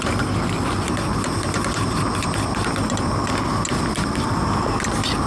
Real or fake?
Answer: real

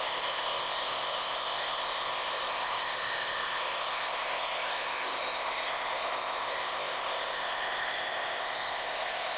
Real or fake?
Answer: fake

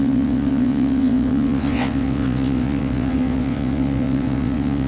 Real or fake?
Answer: fake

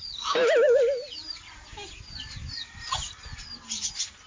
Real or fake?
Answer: fake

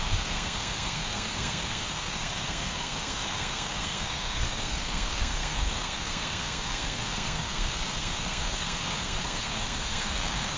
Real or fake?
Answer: fake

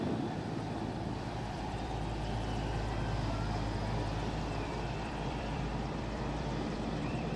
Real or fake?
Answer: fake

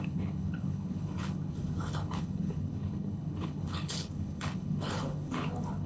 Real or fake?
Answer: fake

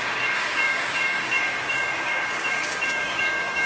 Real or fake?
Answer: fake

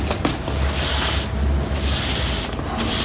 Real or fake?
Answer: real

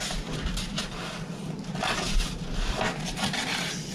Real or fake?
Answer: real